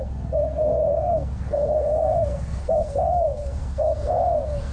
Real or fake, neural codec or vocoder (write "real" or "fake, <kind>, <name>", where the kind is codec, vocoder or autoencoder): fake, codec, SNAC